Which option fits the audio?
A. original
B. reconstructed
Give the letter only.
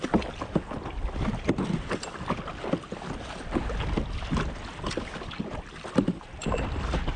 A